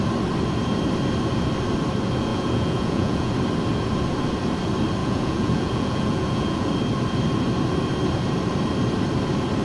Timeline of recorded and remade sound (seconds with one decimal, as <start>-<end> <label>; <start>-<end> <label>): 0.0-2.3 recorded; 2.3-3.3 remade; 3.3-5.0 recorded; 5.0-6.7 remade; 6.7-9.6 recorded